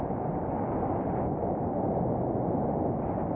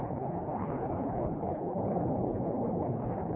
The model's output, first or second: second